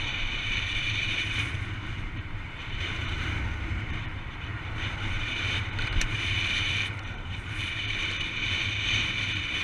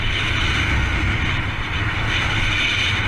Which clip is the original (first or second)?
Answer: second